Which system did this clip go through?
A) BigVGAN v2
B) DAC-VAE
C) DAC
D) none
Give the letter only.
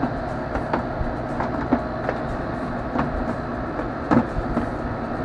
D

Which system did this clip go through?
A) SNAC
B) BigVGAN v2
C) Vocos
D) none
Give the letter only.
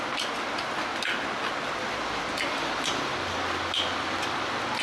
D